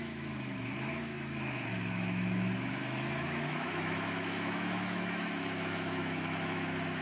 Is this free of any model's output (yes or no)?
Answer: no